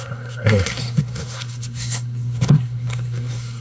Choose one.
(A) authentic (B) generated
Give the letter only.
B